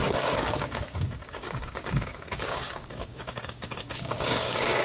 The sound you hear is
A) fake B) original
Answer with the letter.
A